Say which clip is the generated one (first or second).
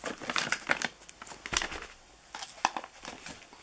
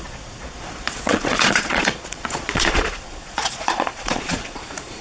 second